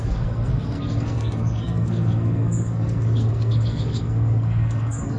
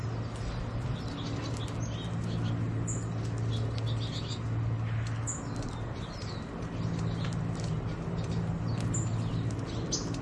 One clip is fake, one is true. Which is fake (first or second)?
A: first